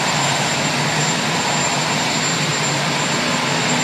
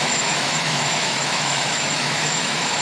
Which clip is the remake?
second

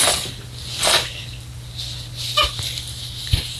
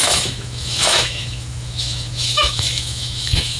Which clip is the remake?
second